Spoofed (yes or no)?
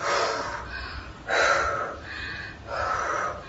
yes